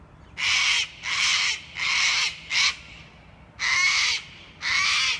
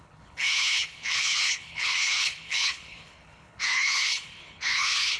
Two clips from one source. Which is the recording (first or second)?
first